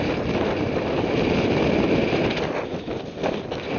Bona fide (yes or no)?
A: yes